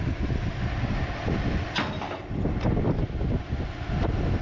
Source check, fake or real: real